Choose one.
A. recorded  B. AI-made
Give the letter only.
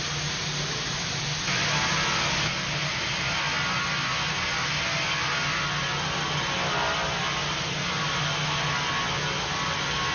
A